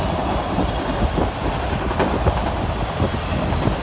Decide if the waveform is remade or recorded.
recorded